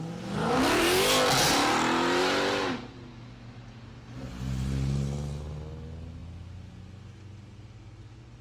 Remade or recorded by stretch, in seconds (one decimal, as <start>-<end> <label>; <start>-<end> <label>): 0.0-8.4 recorded